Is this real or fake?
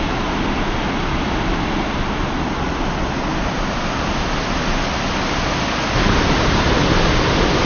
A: real